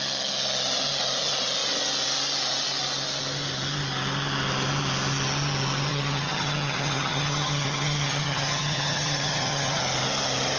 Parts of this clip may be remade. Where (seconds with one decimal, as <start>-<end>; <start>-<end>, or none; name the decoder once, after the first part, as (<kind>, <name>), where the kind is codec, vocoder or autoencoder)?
5.9-9.8 (vocoder, HiFi-GAN)